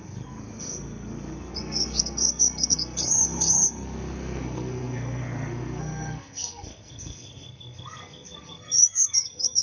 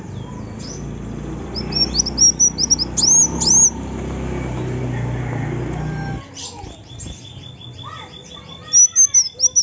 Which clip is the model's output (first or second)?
first